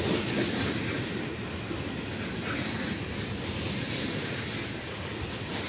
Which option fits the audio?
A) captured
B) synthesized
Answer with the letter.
A